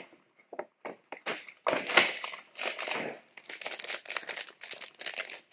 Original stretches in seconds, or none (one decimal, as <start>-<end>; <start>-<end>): 0.0-5.5